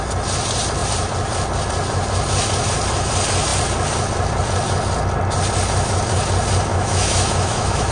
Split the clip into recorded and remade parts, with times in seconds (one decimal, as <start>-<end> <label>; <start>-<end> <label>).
0.0-6.7 recorded; 6.7-7.9 remade